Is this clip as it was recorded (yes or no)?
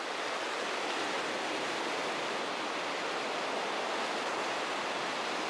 yes